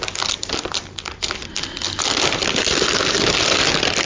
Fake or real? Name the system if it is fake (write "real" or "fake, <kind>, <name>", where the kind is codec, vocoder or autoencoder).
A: real